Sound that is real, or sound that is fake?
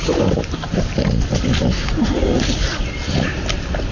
real